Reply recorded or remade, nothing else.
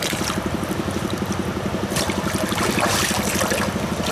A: recorded